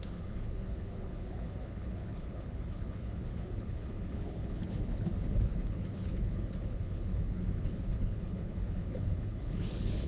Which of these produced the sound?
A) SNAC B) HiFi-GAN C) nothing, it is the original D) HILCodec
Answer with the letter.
D